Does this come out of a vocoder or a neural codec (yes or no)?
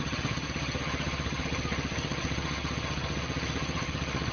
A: yes